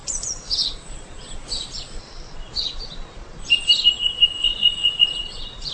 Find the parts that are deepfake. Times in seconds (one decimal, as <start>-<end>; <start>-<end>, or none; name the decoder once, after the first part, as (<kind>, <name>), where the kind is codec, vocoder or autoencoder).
0.0-3.4 (vocoder, Vocos); 4.4-5.7